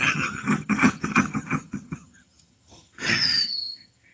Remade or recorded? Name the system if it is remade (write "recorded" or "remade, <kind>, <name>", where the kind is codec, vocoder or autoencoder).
remade, vocoder, HiFi-GAN